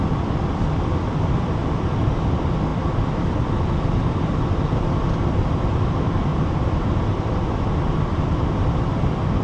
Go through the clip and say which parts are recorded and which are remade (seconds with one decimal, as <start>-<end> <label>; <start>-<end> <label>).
0.0-9.4 remade